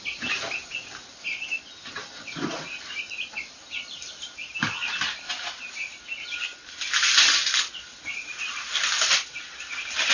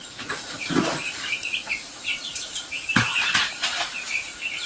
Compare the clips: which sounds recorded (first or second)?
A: first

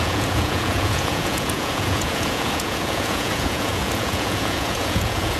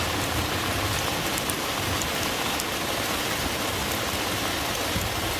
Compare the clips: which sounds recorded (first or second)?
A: second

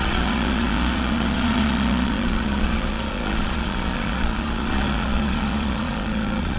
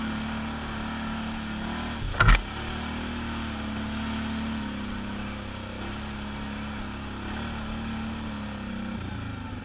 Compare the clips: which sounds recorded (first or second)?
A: second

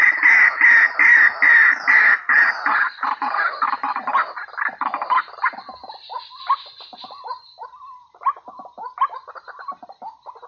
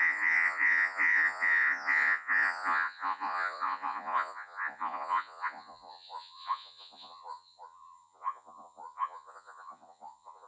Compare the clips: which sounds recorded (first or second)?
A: first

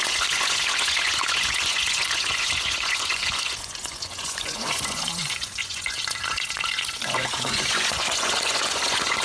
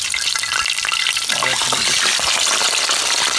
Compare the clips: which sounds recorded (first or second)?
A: second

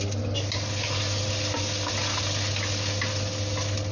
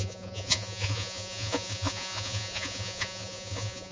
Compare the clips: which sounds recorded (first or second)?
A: first